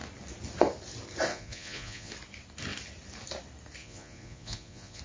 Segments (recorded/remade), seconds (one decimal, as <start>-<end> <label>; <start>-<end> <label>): 0.0-1.3 recorded; 1.3-2.1 remade; 2.1-3.8 recorded; 3.8-5.0 remade